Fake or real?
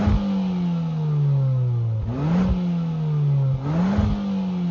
real